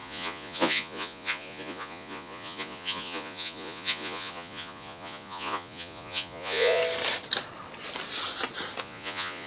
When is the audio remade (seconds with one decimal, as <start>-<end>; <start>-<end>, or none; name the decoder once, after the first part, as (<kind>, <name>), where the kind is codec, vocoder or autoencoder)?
0.0-6.8 (vocoder, Vocos); 8.8-9.5